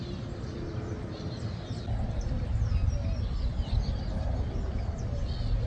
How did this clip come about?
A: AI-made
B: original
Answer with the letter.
B